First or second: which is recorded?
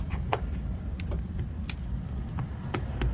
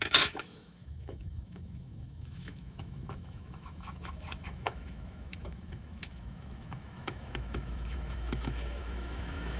first